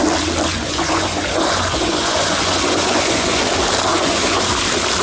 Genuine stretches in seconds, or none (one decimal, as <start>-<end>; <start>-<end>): 0.0-0.5; 3.4-3.9; 4.4-5.0